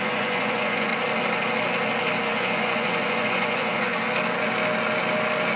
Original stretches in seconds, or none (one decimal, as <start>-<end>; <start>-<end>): 0.9-2.2; 3.9-5.6